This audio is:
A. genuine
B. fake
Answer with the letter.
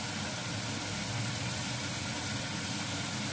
A